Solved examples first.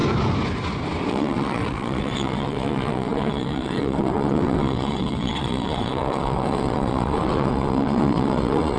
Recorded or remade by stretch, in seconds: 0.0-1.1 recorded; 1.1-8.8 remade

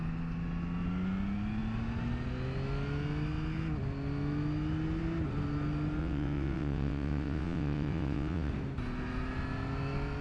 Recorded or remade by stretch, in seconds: 0.0-6.0 recorded; 6.0-8.5 remade; 8.5-10.2 recorded

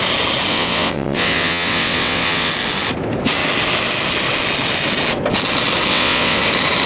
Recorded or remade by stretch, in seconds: 0.0-0.5 recorded; 0.5-2.5 remade; 2.5-5.9 recorded; 5.9-6.4 remade; 6.4-6.9 recorded

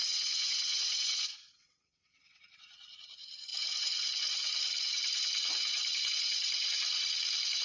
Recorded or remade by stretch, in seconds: 0.0-2.4 remade; 2.4-7.6 recorded

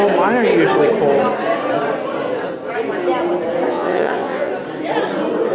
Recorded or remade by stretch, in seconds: 0.0-3.7 recorded; 3.7-4.5 remade; 4.5-5.5 recorded